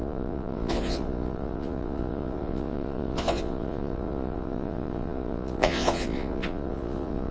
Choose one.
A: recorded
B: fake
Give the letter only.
B